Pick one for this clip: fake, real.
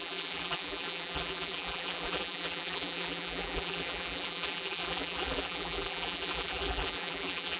fake